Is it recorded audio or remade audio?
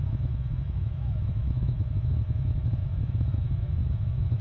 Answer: remade